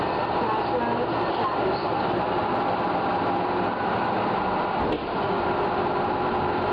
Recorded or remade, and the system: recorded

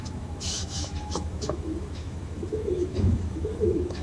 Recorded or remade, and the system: remade, autoencoder, DAC-VAE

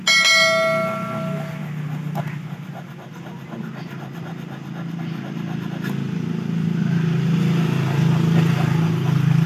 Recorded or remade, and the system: recorded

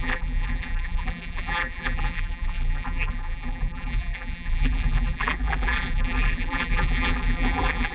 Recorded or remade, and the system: remade, vocoder, BigVGAN v2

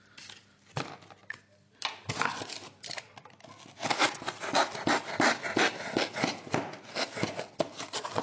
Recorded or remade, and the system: recorded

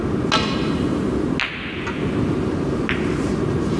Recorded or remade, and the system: recorded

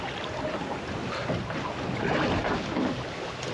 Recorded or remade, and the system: recorded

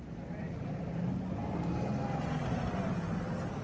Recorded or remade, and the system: recorded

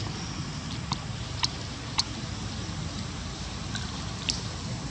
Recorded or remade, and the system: recorded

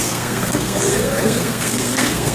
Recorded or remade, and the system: remade, codec, SNAC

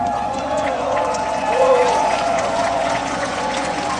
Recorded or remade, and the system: remade, vocoder, Vocos